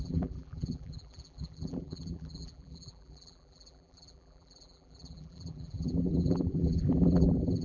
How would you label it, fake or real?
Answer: fake